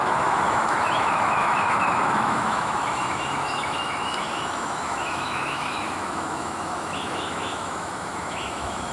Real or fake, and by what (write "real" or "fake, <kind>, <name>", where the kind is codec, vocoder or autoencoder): fake, autoencoder, DAC-VAE